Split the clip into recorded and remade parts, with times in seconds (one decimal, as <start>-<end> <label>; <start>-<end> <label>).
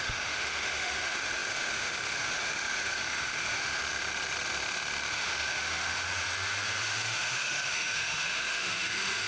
0.0-3.8 remade; 3.8-5.1 recorded; 5.1-6.1 remade; 6.1-6.8 recorded; 6.8-9.3 remade